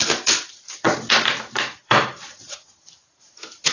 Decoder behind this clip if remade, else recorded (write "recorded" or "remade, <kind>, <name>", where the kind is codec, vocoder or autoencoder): remade, vocoder, BigVGAN v2